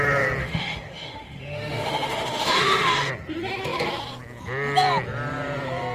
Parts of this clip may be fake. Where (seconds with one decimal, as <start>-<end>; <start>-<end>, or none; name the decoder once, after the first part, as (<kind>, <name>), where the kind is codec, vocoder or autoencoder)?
0.4-3.1 (autoencoder, DAC-VAE)